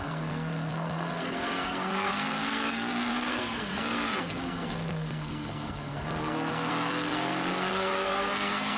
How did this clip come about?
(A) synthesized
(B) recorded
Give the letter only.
A